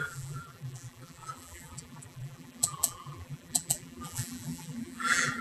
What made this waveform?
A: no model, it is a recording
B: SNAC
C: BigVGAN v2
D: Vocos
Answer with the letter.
C